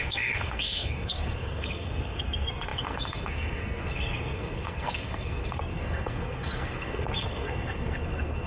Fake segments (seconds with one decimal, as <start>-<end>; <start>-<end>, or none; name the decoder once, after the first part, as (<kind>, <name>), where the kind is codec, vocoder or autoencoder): 0.0-8.5 (codec, SNAC)